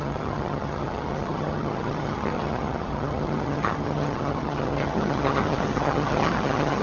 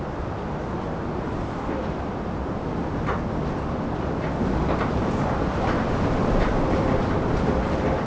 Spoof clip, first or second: first